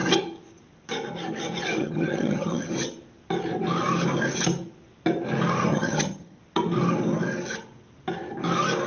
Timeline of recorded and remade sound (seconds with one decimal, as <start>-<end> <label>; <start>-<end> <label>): 0.0-1.8 recorded; 1.8-2.7 remade; 2.7-5.7 recorded; 5.7-6.4 remade; 6.4-8.9 recorded